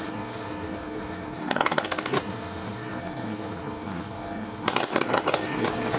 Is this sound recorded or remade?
remade